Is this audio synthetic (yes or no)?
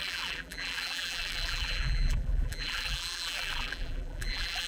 yes